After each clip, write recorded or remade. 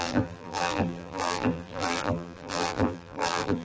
remade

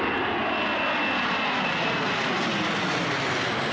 recorded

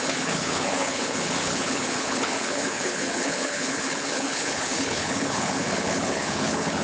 remade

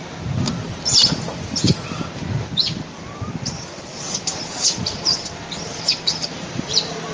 recorded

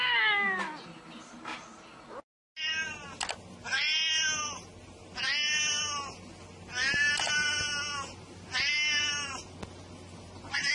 recorded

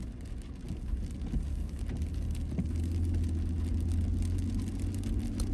recorded